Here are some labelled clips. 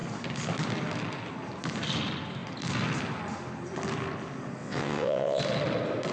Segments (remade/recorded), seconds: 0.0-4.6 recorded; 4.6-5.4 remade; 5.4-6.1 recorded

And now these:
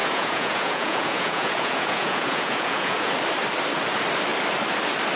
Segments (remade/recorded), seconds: 0.0-3.1 remade; 3.1-5.2 recorded